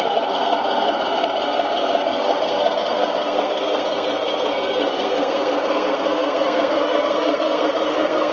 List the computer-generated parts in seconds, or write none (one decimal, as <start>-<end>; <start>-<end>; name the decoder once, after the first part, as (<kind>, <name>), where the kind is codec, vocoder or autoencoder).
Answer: 0.0-8.3 (codec, SNAC)